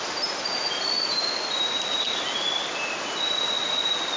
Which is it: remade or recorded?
recorded